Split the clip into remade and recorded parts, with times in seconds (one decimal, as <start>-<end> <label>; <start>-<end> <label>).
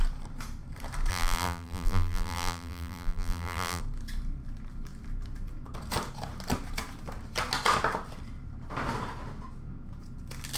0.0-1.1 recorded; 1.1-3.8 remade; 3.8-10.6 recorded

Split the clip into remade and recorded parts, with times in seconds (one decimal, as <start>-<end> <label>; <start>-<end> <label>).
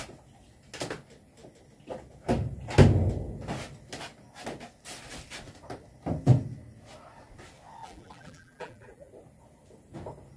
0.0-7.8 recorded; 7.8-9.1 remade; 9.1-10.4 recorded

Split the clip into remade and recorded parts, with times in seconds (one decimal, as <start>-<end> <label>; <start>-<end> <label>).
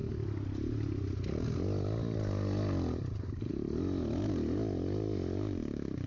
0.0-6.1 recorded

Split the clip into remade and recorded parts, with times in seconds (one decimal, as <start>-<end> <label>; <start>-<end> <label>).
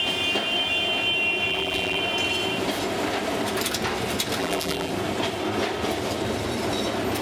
0.0-1.5 recorded; 1.5-2.0 remade; 2.0-4.4 recorded; 4.4-4.9 remade; 4.9-7.2 recorded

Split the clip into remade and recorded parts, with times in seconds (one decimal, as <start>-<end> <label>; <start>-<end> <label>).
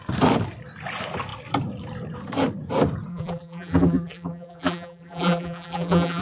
0.0-3.1 recorded; 3.1-6.2 remade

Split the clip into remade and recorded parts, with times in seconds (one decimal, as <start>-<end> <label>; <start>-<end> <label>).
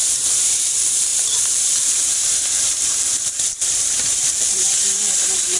0.0-5.6 remade